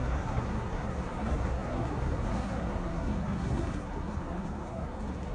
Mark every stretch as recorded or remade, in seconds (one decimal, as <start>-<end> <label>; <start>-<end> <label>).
0.0-5.3 remade